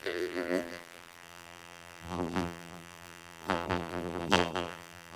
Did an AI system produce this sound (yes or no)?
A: yes